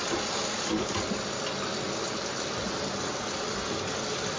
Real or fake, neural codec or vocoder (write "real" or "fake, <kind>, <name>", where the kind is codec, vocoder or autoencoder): real